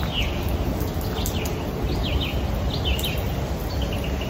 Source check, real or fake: real